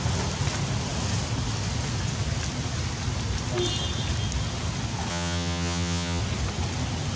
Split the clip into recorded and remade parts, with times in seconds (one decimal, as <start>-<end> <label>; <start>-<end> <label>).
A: 0.0-5.1 recorded; 5.1-6.2 remade; 6.2-7.2 recorded